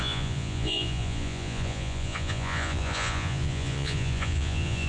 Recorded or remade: remade